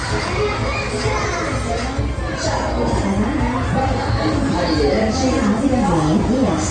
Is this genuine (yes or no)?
yes